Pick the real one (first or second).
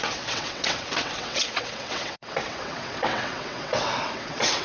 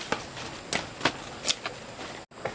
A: second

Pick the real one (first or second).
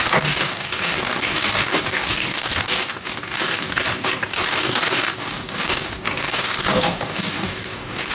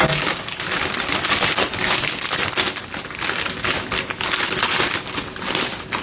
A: second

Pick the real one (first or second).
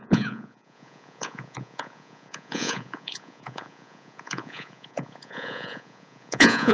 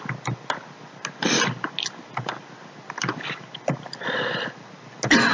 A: second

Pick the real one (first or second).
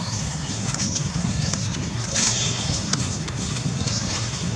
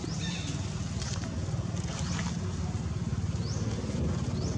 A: second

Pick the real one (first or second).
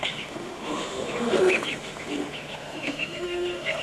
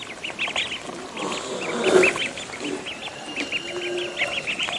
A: second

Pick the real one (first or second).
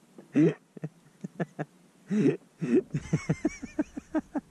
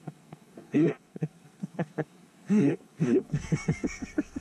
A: first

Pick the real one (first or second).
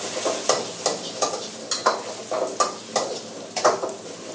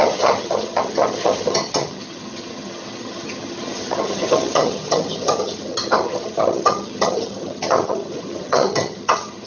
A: first